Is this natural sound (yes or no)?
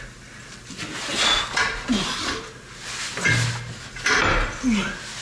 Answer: yes